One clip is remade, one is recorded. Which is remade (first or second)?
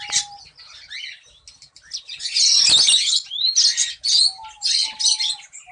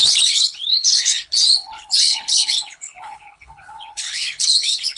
second